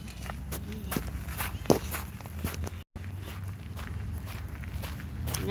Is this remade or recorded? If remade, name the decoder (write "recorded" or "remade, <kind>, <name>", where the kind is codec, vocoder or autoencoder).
recorded